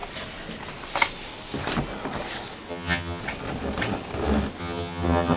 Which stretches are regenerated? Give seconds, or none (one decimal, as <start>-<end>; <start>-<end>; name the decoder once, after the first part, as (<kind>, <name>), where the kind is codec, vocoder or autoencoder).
2.7-3.2 (vocoder, HiFi-GAN); 4.6-5.4